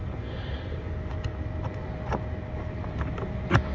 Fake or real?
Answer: real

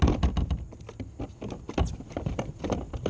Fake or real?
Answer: real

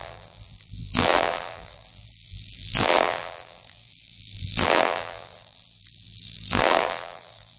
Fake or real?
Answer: fake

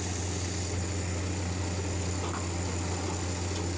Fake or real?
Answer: real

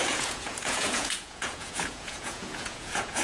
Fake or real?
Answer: fake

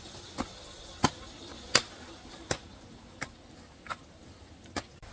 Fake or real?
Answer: real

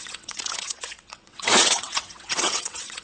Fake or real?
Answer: fake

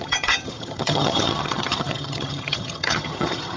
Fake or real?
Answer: fake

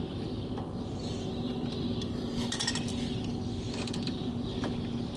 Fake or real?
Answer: real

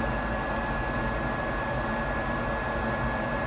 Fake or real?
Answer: real